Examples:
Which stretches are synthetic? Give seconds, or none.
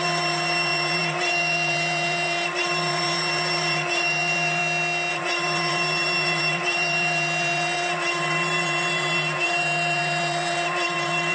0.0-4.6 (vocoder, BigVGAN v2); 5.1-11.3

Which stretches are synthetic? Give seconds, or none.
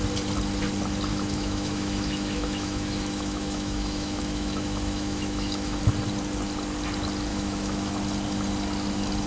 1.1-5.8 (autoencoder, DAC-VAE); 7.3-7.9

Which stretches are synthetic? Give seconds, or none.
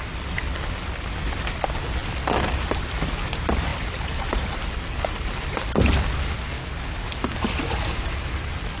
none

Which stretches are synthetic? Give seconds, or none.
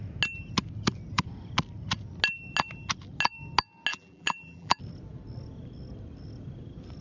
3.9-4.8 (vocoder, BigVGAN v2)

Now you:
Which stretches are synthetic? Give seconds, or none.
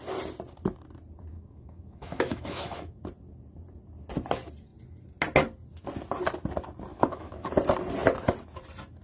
1.3-3.0 (autoencoder, DAC-VAE); 6.9-7.5